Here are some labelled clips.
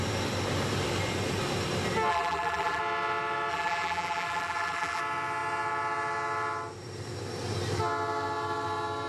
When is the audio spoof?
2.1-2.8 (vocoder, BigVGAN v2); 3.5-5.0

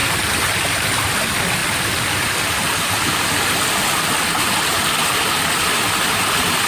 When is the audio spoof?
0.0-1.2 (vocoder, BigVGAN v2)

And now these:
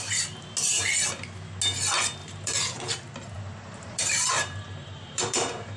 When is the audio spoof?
2.2-5.8 (vocoder, BigVGAN v2)

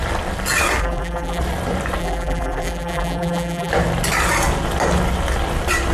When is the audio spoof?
0.8-1.4 (vocoder, BigVGAN v2); 2.0-3.7

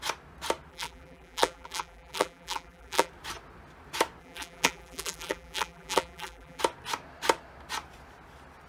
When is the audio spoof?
0.7-3.1 (vocoder, BigVGAN v2); 4.2-6.6